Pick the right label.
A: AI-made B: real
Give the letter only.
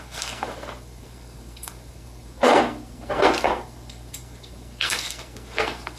A